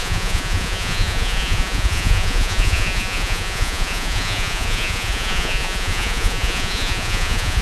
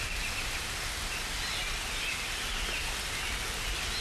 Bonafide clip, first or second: second